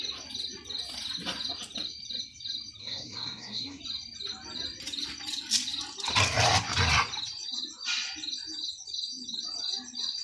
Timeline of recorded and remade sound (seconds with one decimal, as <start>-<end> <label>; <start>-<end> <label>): 0.0-2.8 recorded; 2.8-3.8 remade; 3.8-10.2 recorded